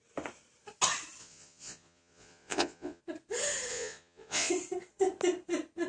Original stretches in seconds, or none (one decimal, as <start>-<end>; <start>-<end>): 0.0-1.2; 3.0-3.7; 4.5-5.9